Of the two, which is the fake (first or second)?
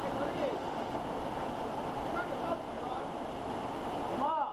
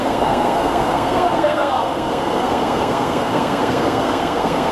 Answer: second